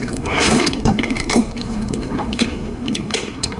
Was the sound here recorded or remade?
remade